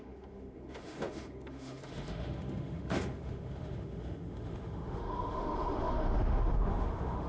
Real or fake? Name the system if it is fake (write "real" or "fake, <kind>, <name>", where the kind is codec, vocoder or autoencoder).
fake, autoencoder, DAC-VAE